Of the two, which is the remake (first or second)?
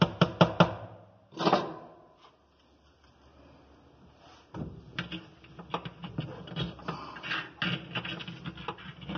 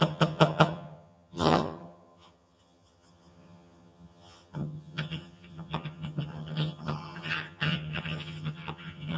second